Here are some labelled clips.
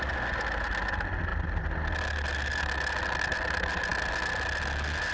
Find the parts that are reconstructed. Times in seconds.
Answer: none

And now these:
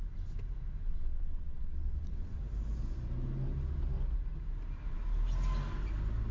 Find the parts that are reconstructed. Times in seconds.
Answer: 0.9-2.4 (vocoder, WaveNeXt)